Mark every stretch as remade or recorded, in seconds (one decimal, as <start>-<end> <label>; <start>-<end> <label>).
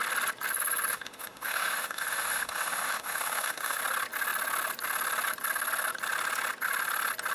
0.0-0.9 recorded; 0.9-3.8 remade; 3.8-7.3 recorded